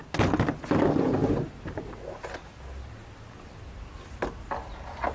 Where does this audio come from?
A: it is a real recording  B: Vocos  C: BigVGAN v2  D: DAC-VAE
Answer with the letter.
A